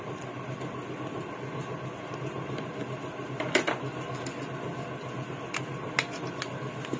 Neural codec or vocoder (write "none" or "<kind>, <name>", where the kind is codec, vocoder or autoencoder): none